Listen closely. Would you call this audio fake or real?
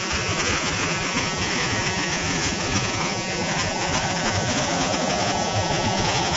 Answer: fake